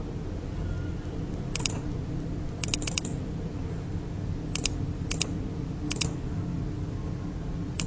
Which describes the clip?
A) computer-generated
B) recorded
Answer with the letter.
B